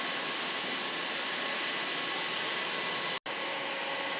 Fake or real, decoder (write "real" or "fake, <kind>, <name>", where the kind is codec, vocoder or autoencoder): real